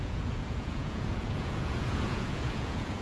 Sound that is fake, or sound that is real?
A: fake